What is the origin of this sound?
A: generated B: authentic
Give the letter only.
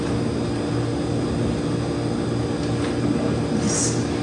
B